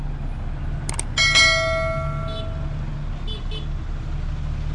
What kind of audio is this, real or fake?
real